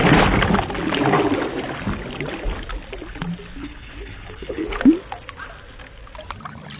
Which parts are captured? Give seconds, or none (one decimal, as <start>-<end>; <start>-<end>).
0.0-3.6; 4.8-6.8